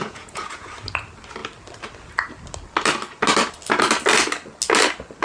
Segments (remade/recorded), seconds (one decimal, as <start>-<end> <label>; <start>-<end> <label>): 0.0-0.7 remade; 0.7-5.2 recorded